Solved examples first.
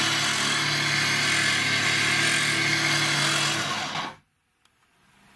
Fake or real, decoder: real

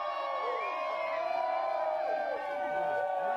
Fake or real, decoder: fake, vocoder, BigVGAN v2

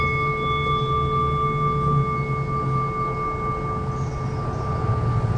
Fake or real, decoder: real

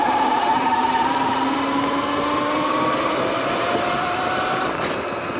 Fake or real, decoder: real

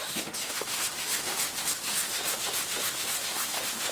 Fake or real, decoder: fake, autoencoder, DAC-VAE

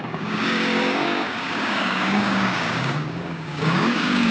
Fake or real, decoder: fake, codec, DAC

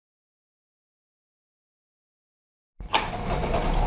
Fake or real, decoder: real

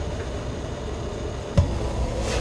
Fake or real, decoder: real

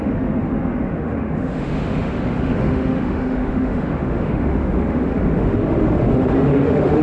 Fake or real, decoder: fake, autoencoder, DAC-VAE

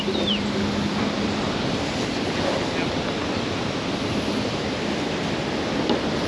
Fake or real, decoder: real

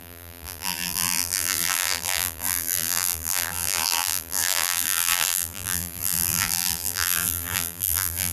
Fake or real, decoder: fake, vocoder, BigVGAN v2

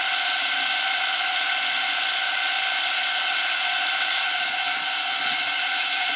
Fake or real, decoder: real